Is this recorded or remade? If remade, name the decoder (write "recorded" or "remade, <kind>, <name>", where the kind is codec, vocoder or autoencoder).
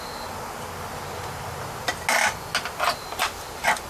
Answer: recorded